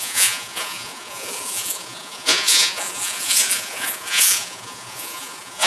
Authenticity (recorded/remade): remade